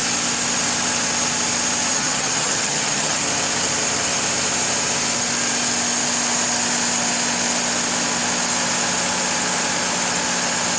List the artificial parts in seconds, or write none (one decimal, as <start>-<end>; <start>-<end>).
1.9-3.2